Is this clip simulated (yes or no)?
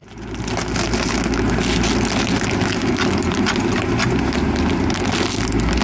no